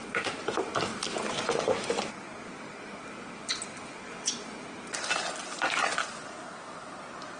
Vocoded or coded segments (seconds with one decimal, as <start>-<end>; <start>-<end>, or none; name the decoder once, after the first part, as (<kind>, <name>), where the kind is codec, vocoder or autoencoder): 0.9-2.1 (vocoder, BigVGAN v2)